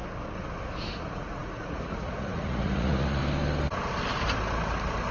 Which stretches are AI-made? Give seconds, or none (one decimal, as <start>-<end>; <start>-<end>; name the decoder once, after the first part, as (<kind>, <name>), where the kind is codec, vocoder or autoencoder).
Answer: 0.9-3.2 (vocoder, Vocos)